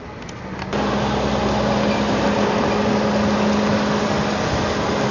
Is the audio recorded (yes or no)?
yes